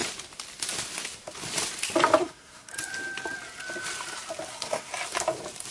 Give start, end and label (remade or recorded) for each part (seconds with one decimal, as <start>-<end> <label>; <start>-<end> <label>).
0.0-2.2 recorded; 2.2-2.7 remade; 2.7-4.5 recorded; 4.5-4.9 remade; 4.9-5.7 recorded